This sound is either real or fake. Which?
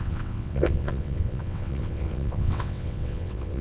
fake